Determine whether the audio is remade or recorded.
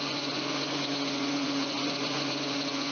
remade